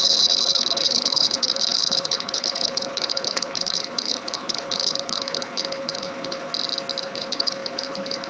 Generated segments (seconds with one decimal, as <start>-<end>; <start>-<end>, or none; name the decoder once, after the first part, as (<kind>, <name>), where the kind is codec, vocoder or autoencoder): 0.0-6.5 (codec, HILCodec); 7.0-8.3